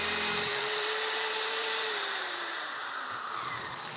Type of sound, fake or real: fake